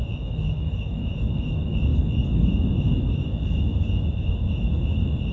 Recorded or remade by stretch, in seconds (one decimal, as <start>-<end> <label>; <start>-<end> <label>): 0.0-1.9 remade; 1.9-2.5 recorded; 2.5-5.3 remade